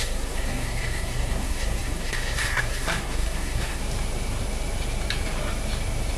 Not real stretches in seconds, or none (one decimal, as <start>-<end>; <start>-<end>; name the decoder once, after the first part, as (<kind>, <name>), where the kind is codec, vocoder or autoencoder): 0.0-3.8 (codec, SNAC)

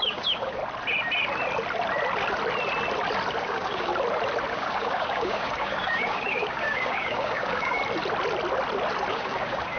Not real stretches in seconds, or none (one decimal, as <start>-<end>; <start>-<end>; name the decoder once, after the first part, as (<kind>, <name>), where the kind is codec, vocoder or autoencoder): 0.0-0.6 (codec, DAC); 3.4-3.9; 4.5-7.8; 9.1-9.8

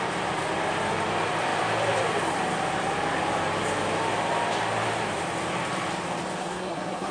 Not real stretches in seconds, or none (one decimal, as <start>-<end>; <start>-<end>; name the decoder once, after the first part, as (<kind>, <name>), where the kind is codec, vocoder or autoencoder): 6.4-7.1 (codec, SNAC)

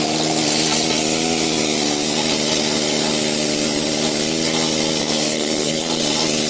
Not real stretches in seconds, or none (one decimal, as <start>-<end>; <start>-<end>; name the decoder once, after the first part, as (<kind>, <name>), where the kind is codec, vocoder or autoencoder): 5.0-6.0 (codec, SNAC)

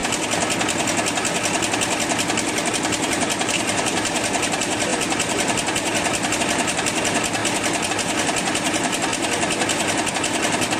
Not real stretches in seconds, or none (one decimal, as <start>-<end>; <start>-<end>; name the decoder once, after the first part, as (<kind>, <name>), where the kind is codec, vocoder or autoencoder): 2.7-7.4 (vocoder, BigVGAN v2); 7.9-10.8

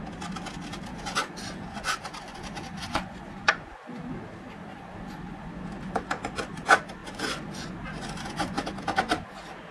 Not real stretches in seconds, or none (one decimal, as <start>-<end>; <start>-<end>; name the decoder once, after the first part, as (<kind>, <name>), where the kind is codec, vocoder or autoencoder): 0.9-2.4 (vocoder, Vocos); 2.8-3.7; 4.7-6.6; 7.0-8.6

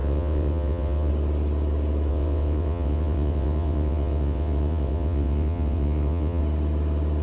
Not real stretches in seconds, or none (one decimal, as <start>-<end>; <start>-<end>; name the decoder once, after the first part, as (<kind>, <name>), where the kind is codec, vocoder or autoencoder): 0.0-1.1 (vocoder, WaveNeXt); 2.1-6.4

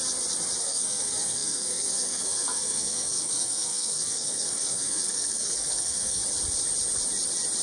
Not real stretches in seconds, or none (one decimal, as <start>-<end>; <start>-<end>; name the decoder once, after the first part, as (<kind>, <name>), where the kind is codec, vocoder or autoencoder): 0.6-6.2 (codec, SNAC)